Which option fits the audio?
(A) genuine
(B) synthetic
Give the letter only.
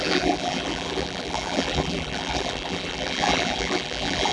B